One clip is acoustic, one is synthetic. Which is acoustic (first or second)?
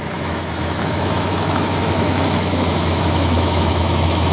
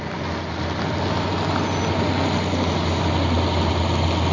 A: second